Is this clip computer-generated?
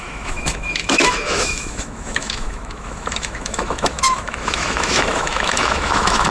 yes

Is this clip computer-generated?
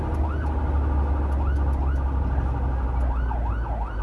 no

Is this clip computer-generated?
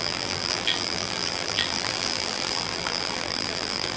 yes